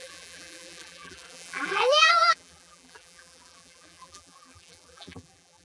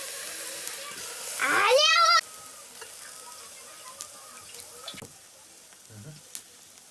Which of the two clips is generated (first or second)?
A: first